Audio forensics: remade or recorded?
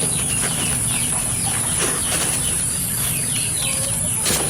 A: recorded